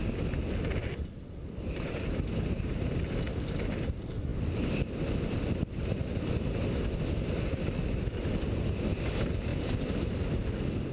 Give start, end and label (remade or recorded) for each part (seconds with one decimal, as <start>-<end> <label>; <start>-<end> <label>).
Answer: 0.0-10.9 recorded